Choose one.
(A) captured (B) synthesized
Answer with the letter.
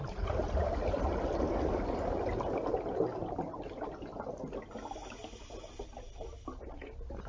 A